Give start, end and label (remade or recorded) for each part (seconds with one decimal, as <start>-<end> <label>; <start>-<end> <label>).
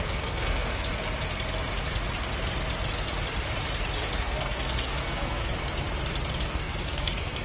0.0-0.9 remade; 0.9-4.2 recorded; 4.2-5.4 remade; 5.4-6.4 recorded; 6.4-7.4 remade